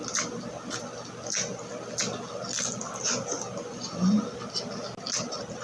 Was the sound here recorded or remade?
recorded